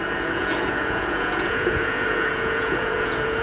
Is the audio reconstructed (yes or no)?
yes